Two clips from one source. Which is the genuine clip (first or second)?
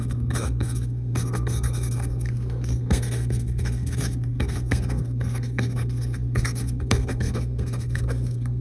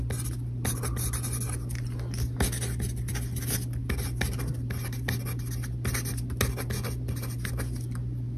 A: second